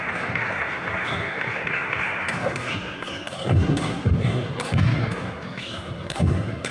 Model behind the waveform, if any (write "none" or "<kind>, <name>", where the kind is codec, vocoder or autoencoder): codec, SNAC